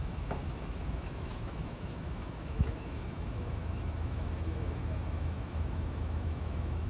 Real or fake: fake